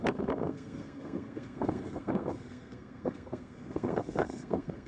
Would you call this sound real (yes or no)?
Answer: no